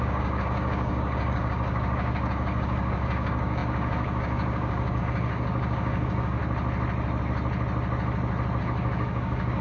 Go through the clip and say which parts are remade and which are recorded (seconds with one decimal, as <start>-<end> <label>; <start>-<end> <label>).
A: 0.0-6.4 remade; 6.4-8.6 recorded; 8.6-9.6 remade